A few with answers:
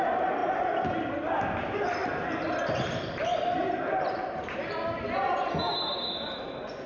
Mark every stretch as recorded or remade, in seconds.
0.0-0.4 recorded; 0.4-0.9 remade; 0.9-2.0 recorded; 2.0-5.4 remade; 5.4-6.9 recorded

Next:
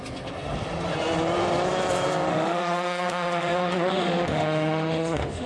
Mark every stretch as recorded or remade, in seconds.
0.0-2.3 recorded; 2.3-5.5 remade

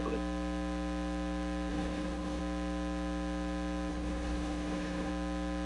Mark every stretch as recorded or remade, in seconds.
0.0-1.7 recorded; 1.7-2.4 remade; 2.4-3.9 recorded; 3.9-5.1 remade; 5.1-5.7 recorded

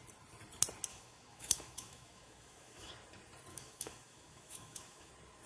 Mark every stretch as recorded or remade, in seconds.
0.0-0.9 recorded; 0.9-2.9 remade; 2.9-3.5 recorded; 3.5-5.1 remade; 5.1-5.5 recorded

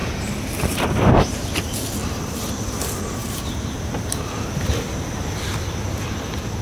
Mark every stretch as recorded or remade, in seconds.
0.0-1.5 remade; 1.5-2.0 recorded; 2.0-2.5 remade; 2.5-3.2 recorded; 3.2-4.3 remade; 4.3-6.6 recorded

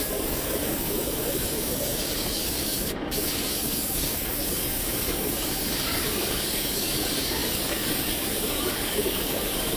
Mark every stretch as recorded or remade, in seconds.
0.0-9.8 remade